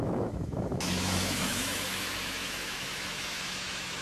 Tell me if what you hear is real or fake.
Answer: fake